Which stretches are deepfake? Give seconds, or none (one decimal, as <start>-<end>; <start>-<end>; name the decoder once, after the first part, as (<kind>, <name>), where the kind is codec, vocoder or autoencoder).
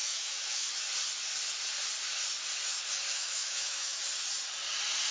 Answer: 0.0-0.8 (autoencoder, DAC-VAE); 3.1-4.0